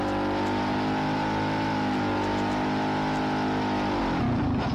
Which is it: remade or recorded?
recorded